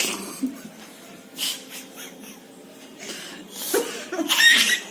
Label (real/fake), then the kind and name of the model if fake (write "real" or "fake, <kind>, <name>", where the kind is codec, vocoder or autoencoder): fake, vocoder, BigVGAN v2